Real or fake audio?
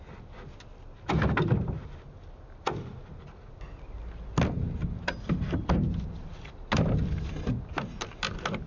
real